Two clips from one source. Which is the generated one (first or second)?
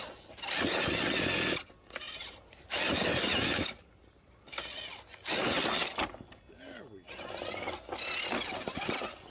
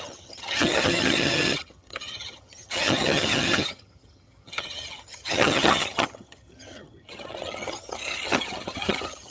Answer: second